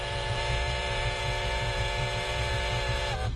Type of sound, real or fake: fake